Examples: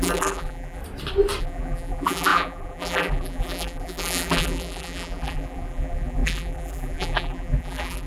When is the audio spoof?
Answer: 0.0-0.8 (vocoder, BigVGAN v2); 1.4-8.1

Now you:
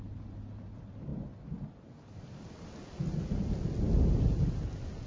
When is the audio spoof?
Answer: none

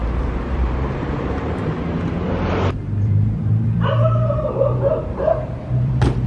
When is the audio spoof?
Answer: 0.0-5.0 (vocoder, BigVGAN v2); 5.7-6.3

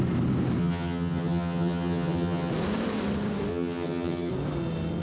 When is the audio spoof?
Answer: 0.6-2.5 (vocoder, HiFi-GAN); 3.5-4.3

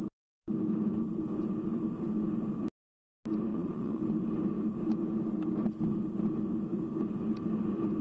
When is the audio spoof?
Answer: 3.5-4.0 (vocoder, Vocos)

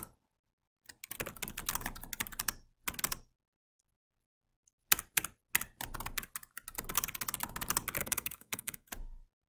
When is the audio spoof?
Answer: 8.0-8.9 (codec, SNAC)